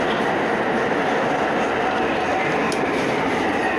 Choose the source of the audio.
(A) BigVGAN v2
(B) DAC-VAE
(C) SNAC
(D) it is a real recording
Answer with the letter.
D